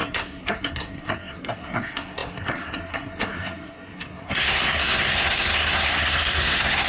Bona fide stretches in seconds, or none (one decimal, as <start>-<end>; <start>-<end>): none